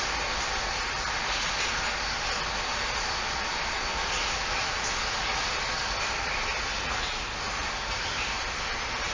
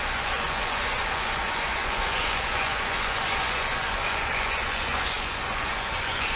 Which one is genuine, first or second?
first